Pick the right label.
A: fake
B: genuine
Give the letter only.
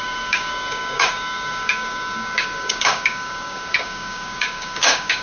A